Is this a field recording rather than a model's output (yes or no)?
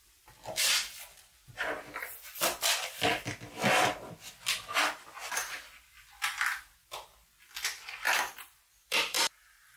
no